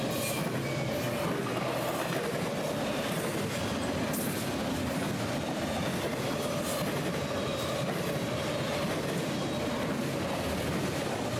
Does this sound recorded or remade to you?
recorded